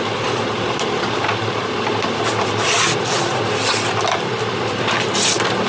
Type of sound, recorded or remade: recorded